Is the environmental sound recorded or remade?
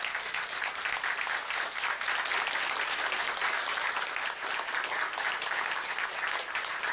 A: recorded